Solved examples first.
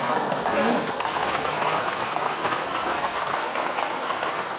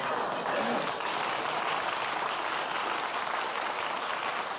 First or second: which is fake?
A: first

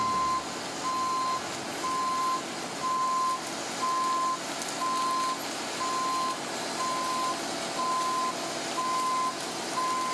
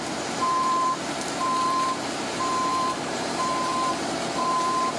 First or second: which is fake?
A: second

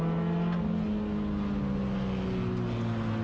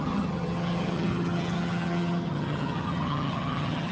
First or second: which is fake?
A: second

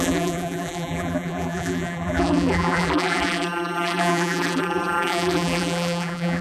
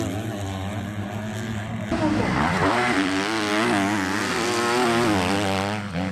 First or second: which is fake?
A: first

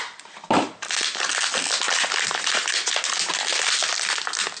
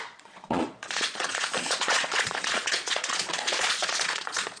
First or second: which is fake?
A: second